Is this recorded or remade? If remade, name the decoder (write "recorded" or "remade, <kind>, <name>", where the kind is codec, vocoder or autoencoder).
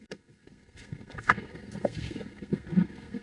remade, codec, SNAC